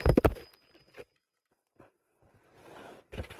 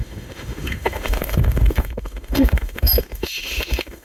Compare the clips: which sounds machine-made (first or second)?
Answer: second